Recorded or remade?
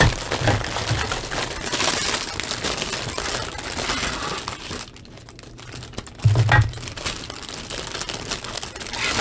recorded